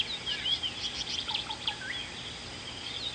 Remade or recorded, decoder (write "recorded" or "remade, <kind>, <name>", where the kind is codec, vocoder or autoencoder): recorded